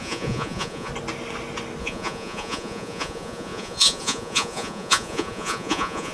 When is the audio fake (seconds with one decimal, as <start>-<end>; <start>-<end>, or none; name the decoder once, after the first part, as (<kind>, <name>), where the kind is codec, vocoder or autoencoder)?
0.0-0.9 (vocoder, Vocos); 1.8-6.1